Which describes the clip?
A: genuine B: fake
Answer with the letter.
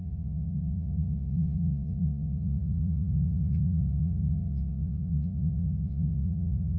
B